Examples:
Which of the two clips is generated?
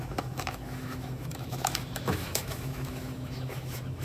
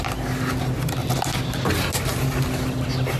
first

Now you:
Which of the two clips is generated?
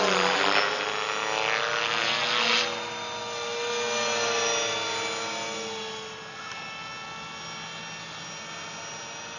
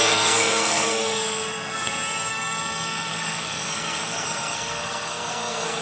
second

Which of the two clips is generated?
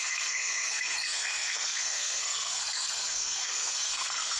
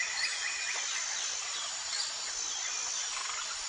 first